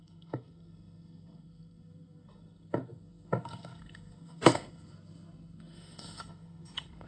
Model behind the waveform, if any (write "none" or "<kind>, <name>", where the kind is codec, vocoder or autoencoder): codec, SNAC